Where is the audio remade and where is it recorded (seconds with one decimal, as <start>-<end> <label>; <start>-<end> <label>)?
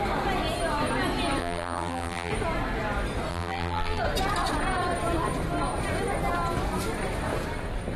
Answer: 0.0-1.4 recorded; 1.4-2.3 remade; 2.3-3.3 recorded; 3.3-4.0 remade; 4.0-8.0 recorded